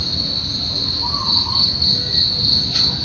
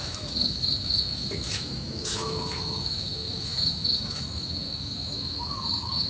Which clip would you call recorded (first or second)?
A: first